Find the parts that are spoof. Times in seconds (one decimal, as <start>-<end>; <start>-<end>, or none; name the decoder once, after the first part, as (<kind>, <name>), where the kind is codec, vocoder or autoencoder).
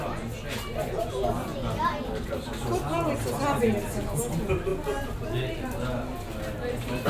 none